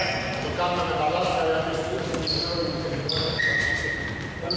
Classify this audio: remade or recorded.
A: recorded